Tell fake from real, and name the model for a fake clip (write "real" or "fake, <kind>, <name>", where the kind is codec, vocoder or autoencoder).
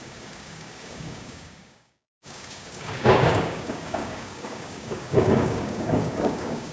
fake, codec, DAC